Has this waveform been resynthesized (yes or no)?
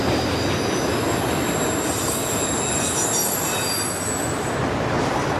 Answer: no